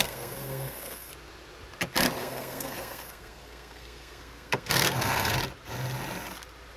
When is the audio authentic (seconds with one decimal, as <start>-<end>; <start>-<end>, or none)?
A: 1.1-2.2; 5.3-6.8